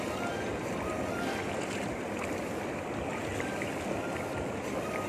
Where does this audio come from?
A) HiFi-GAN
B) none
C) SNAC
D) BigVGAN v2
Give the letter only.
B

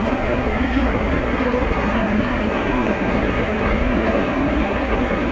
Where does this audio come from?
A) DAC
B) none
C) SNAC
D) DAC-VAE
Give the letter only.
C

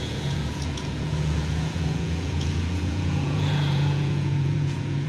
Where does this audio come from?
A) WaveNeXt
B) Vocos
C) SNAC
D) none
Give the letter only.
B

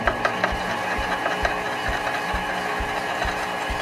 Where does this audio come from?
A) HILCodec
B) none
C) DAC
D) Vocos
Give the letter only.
B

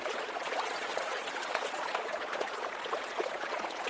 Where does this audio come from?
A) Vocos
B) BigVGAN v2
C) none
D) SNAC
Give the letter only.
A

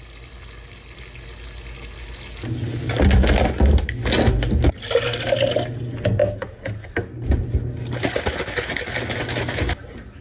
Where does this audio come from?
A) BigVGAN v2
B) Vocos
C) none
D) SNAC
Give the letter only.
C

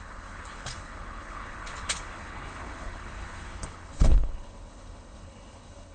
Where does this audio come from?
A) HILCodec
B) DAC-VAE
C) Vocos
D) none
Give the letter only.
A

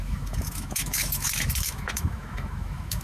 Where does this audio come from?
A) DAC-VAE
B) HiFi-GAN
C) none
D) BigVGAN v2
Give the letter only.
A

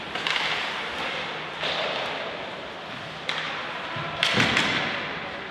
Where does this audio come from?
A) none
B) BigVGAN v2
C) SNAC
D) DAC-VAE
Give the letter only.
A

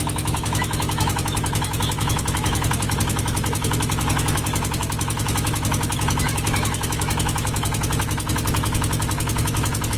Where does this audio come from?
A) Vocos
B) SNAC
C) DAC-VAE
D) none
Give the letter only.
C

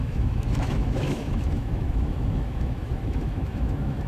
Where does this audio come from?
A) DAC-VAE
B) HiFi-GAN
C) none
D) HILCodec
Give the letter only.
A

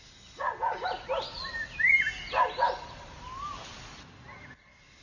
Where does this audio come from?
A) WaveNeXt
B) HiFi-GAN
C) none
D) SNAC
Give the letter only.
C